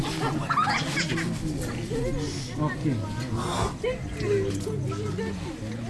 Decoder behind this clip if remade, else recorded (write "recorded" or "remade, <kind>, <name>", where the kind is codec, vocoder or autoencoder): recorded